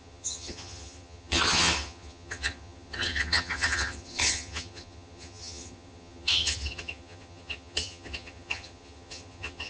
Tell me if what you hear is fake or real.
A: fake